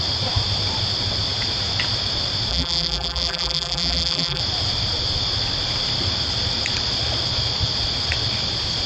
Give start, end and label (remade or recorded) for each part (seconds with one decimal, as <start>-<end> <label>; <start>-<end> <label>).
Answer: 0.0-2.5 recorded; 2.5-4.4 remade; 4.4-8.9 recorded